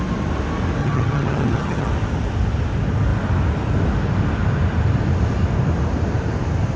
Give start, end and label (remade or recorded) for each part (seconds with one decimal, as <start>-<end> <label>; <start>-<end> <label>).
0.0-0.8 recorded; 0.8-1.9 remade; 1.9-6.8 recorded